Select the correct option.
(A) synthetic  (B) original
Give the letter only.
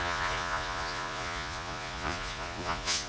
A